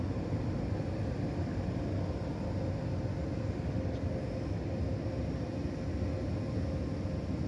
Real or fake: real